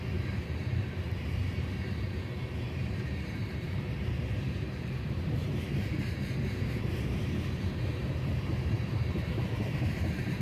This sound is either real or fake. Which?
fake